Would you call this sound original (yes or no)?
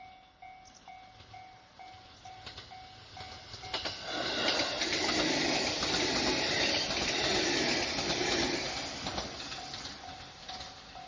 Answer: yes